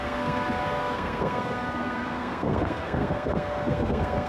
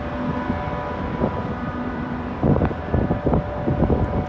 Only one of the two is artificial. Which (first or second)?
first